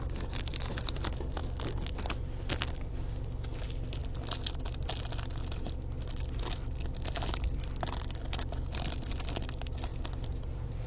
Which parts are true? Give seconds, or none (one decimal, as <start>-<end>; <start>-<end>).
0.0-10.9